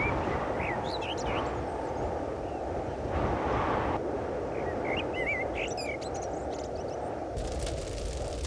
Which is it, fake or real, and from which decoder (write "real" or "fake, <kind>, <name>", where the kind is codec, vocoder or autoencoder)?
real